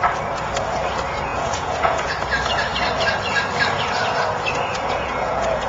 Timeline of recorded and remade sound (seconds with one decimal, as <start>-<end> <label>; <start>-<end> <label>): 0.0-1.3 recorded; 1.3-2.1 remade; 2.1-4.7 recorded; 4.7-5.7 remade